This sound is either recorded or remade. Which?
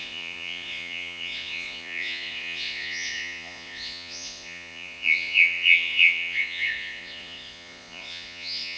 remade